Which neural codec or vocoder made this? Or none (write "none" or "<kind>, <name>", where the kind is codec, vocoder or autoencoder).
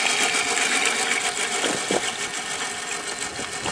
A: none